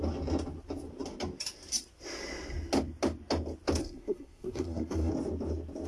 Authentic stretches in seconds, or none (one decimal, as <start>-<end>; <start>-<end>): 0.0-3.8; 5.1-5.9